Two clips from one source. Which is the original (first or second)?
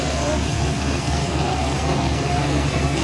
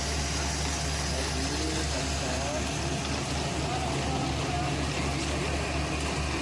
second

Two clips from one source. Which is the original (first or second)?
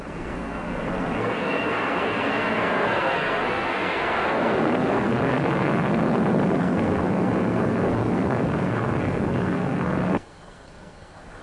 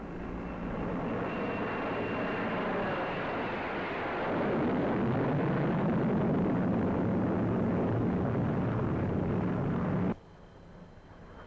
second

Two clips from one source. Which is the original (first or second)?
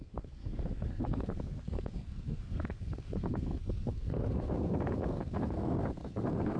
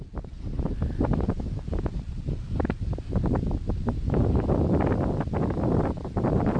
second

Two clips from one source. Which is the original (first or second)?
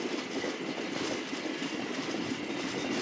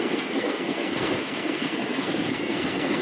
first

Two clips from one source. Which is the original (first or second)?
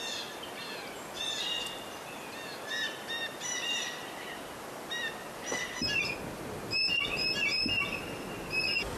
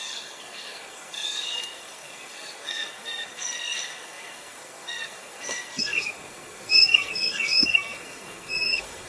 first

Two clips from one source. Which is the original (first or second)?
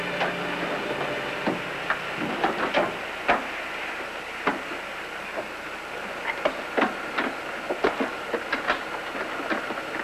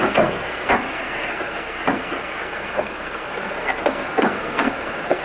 first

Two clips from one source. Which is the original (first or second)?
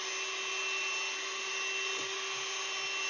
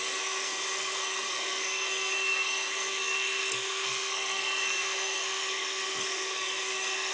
first